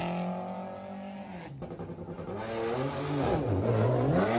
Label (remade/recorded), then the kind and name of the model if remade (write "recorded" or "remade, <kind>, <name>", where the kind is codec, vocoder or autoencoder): recorded